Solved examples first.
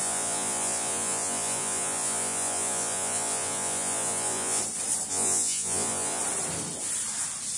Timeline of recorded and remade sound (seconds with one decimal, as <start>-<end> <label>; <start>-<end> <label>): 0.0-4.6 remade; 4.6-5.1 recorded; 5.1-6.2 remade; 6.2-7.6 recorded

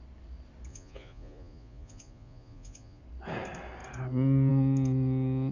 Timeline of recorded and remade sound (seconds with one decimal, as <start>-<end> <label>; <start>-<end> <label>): 0.0-0.7 recorded; 0.7-3.0 remade; 3.0-5.5 recorded

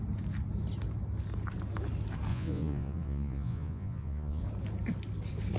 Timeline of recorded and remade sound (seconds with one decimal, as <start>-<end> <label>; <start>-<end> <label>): 0.0-2.3 recorded; 2.3-4.4 remade; 4.4-5.6 recorded